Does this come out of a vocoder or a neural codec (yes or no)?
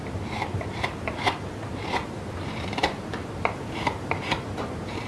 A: yes